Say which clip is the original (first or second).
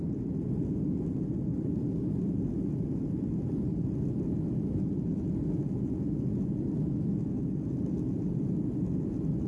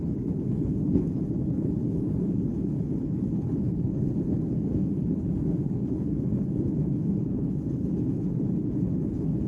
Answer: first